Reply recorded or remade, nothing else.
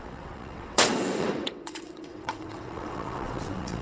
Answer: remade